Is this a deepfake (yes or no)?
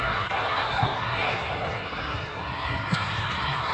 yes